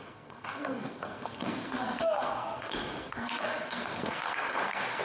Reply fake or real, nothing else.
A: fake